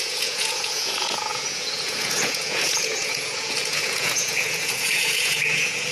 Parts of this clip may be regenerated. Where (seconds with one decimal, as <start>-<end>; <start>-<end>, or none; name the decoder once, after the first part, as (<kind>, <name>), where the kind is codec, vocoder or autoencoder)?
0.0-5.9 (vocoder, Vocos)